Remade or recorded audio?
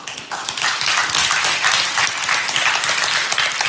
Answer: recorded